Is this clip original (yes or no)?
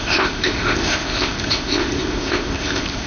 no